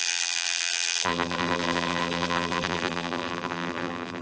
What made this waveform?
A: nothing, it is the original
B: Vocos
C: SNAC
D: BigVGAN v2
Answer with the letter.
D